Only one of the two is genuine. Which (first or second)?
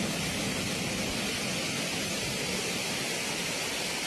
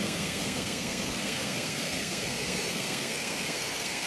first